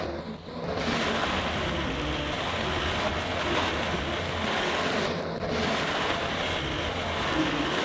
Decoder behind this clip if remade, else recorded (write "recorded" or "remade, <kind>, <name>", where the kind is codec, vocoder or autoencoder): recorded